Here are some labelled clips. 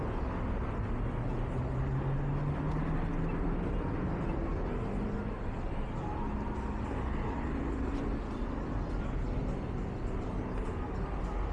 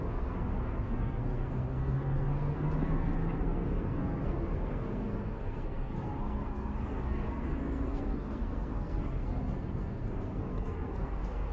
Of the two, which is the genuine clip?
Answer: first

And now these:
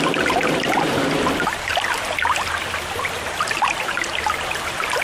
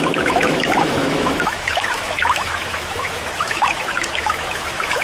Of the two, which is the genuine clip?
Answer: first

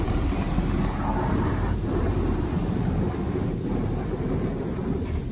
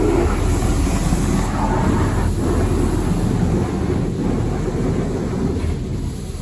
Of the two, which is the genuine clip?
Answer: second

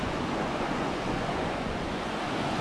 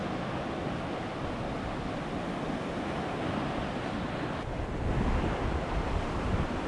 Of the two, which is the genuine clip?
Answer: second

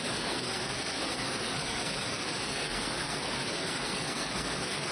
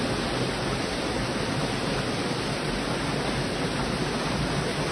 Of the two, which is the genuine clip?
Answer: second